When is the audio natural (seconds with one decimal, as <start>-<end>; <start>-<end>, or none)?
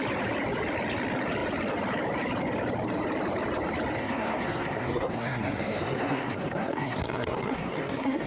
0.0-4.0